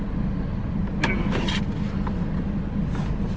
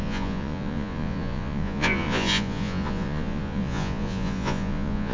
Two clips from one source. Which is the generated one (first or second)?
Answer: second